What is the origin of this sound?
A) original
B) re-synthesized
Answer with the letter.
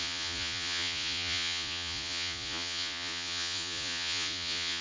B